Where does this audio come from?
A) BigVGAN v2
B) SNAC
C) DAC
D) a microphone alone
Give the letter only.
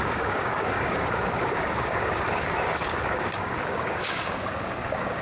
C